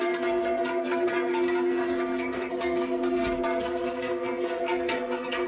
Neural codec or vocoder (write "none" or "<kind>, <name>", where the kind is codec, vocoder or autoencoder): codec, SNAC